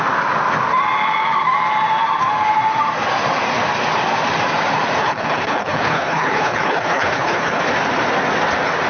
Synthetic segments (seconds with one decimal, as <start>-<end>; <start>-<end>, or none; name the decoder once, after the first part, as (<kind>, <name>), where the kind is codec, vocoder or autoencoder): 5.0-7.6 (codec, HILCodec)